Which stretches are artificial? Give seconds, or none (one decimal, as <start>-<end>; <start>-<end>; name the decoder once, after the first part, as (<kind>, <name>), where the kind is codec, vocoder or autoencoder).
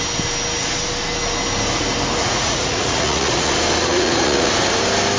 2.2-3.5 (vocoder, Vocos); 3.9-4.8